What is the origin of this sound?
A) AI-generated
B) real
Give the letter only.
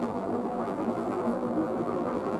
A